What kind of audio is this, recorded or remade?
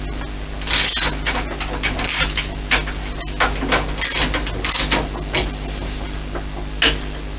recorded